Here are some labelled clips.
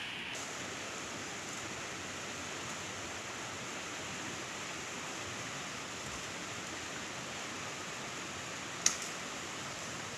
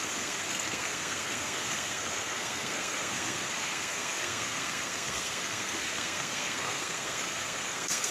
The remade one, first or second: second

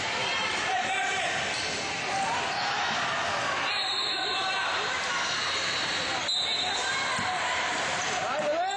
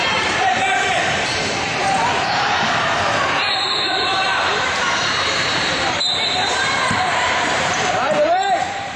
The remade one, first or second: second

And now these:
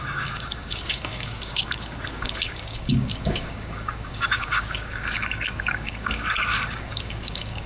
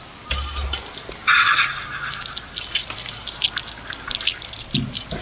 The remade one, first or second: first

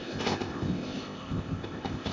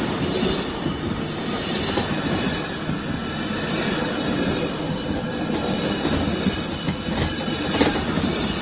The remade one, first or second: first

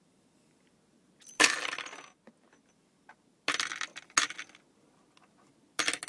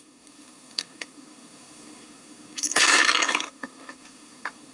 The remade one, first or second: second